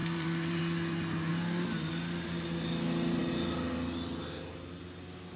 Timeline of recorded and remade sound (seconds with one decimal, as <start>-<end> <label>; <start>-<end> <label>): 0.0-0.6 remade; 0.6-1.3 recorded; 1.3-1.9 remade; 1.9-5.4 recorded